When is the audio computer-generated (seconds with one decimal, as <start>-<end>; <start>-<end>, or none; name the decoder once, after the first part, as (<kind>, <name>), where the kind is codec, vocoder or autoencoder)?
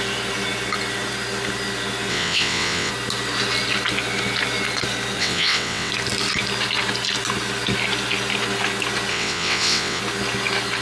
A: 2.1-2.9 (vocoder, WaveNeXt); 5.2-5.9; 9.1-10.0